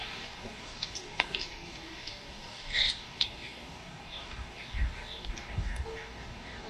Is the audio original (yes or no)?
no